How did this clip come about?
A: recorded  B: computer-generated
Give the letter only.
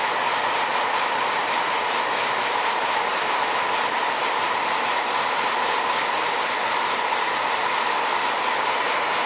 A